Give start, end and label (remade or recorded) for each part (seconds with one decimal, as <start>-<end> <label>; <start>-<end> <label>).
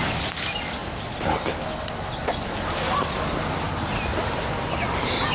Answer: 0.0-5.3 recorded